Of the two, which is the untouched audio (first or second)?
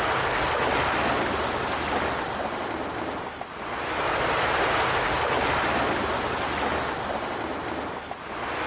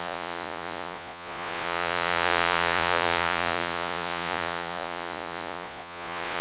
first